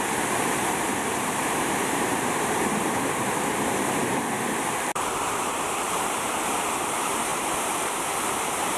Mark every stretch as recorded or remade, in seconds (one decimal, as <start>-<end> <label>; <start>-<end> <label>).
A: 0.0-4.0 remade; 4.0-4.6 recorded; 4.6-8.8 remade